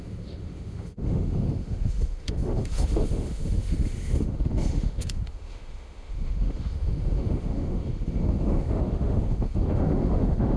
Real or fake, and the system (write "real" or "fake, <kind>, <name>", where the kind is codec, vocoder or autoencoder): fake, autoencoder, DAC-VAE